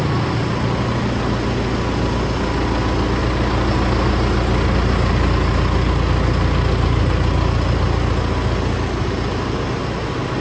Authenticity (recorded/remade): recorded